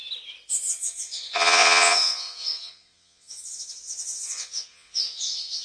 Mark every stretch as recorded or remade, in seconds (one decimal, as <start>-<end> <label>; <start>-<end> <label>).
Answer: 0.0-0.5 recorded; 0.5-5.6 remade